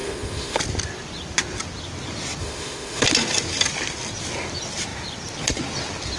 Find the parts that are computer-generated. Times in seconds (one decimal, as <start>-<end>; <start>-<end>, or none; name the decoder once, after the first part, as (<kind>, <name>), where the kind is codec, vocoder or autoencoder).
0.0-0.6 (autoencoder, DAC-VAE); 2.4-3.0